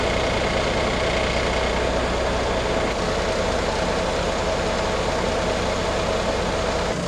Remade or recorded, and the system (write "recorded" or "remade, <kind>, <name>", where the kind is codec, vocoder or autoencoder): recorded